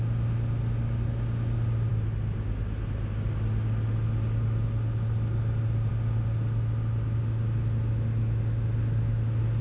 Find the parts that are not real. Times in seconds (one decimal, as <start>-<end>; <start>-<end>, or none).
none